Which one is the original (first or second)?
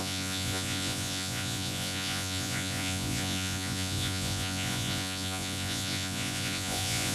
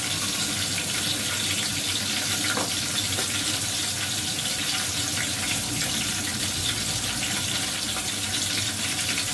second